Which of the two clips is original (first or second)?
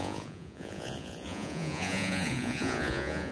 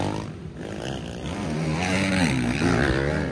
second